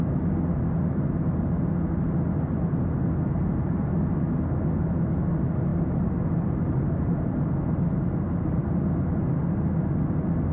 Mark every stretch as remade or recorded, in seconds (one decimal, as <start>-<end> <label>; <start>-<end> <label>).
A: 0.0-3.4 recorded; 3.4-4.1 remade; 4.1-5.7 recorded; 5.7-8.6 remade; 8.6-10.5 recorded